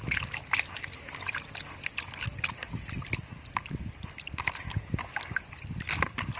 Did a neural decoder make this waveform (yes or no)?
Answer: no